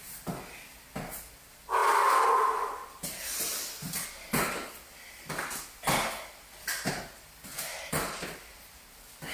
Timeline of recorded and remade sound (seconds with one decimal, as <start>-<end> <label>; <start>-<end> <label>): 0.0-9.3 recorded